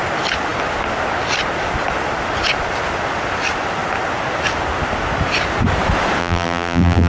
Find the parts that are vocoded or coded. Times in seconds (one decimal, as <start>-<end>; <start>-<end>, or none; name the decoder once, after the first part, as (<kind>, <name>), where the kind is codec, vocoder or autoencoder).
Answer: 6.2-7.1 (vocoder, BigVGAN v2)